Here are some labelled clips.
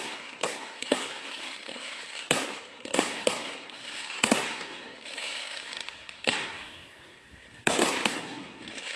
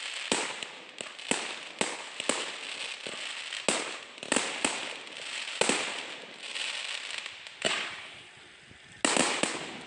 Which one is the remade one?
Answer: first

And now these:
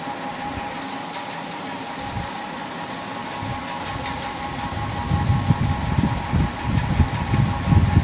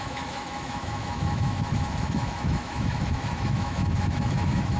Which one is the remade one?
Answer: second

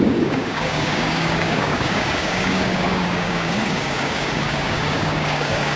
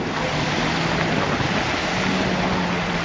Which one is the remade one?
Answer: first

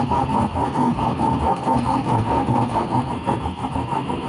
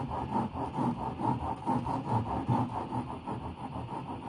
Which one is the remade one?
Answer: first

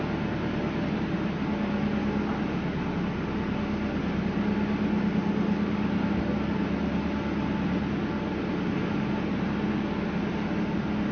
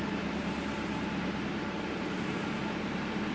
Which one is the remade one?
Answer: second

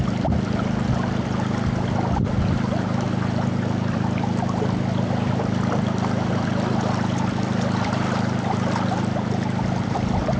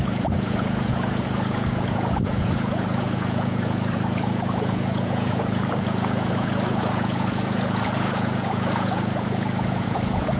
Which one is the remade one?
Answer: second